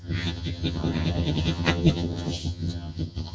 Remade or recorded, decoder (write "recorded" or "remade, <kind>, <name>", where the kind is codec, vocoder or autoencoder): remade, vocoder, HiFi-GAN